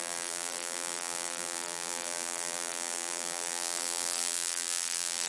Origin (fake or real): fake